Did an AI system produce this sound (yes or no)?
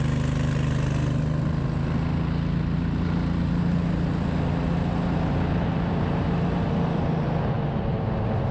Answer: no